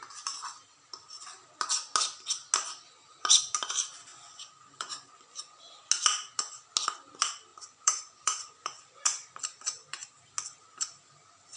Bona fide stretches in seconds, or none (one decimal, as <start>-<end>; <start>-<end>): 0.0-4.1; 5.8-7.5; 9.4-11.6